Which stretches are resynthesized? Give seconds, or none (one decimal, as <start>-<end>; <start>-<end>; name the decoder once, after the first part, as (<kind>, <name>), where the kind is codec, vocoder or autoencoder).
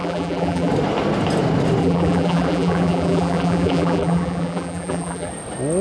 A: 0.0-0.7 (vocoder, BigVGAN v2); 1.8-5.3